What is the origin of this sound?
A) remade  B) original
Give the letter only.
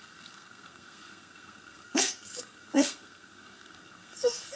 A